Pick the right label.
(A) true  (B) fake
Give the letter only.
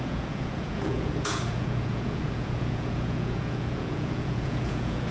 B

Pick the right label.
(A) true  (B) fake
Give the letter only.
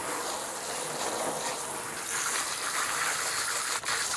A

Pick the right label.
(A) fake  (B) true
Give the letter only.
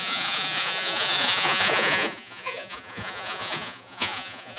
A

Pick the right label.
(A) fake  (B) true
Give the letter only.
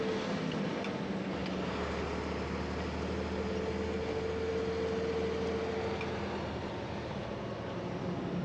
B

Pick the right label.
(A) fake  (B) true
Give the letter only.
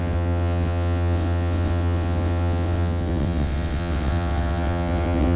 A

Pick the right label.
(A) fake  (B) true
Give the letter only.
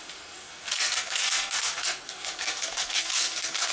A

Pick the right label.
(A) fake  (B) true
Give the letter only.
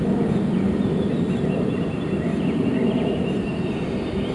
A